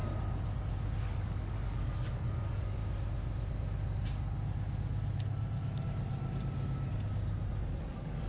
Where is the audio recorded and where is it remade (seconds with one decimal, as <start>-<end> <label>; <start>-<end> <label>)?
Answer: 0.0-1.0 recorded; 1.0-2.8 remade; 2.8-7.8 recorded; 7.8-8.3 remade